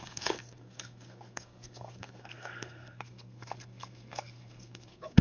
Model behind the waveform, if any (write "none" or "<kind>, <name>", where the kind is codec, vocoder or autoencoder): codec, SNAC